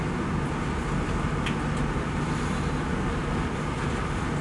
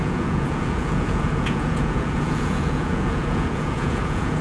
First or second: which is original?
first